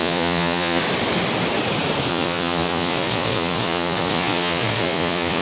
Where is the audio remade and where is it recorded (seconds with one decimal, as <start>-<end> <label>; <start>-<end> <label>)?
0.0-0.8 remade; 0.8-2.1 recorded; 2.1-5.4 remade